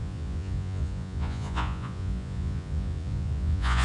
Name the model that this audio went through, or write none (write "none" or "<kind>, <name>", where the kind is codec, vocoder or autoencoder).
vocoder, Vocos